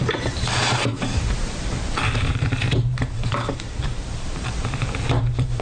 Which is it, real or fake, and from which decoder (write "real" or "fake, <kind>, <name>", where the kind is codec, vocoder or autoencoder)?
fake, vocoder, BigVGAN v2